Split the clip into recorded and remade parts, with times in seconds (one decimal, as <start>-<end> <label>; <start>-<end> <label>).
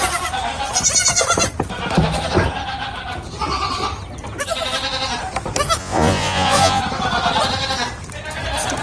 0.0-5.8 recorded; 5.8-6.8 remade; 6.8-8.8 recorded